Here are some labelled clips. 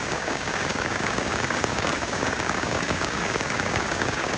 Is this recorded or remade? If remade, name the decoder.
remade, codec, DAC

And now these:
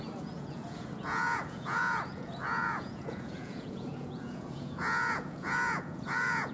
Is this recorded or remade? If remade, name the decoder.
remade, vocoder, Vocos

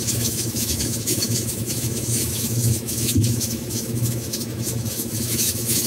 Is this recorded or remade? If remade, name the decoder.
remade, autoencoder, DAC-VAE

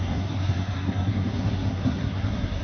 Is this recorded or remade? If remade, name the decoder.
remade, codec, SNAC